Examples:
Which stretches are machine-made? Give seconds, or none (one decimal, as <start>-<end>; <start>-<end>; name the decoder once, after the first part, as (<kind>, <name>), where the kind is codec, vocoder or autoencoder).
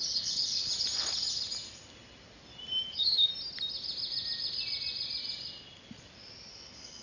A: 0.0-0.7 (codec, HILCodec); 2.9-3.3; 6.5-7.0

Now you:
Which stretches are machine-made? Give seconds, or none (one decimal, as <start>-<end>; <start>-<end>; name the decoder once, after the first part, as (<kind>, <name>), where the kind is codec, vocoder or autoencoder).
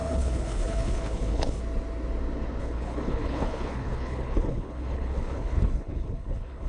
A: 0.0-1.6 (codec, HILCodec); 2.6-6.7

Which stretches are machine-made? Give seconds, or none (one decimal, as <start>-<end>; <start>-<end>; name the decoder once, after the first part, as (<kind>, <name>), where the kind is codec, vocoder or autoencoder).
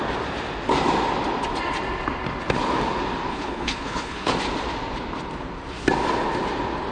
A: 3.3-4.3 (codec, HILCodec)